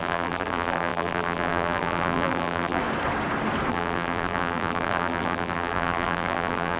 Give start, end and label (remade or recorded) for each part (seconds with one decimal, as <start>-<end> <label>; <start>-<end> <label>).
0.0-2.8 remade; 2.8-3.7 recorded; 3.7-6.8 remade